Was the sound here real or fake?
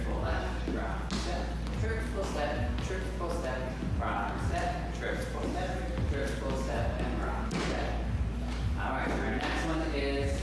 real